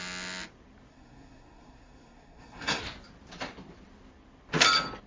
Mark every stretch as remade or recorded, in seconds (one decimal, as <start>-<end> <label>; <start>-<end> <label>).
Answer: 0.0-0.9 recorded; 0.9-2.8 remade; 2.8-5.1 recorded